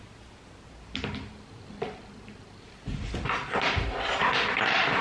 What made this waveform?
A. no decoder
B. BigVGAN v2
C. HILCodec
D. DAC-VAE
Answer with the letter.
A